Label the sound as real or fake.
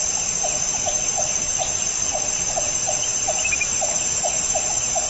real